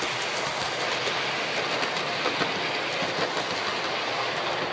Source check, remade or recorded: recorded